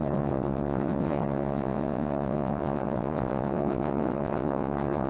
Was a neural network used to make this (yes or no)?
yes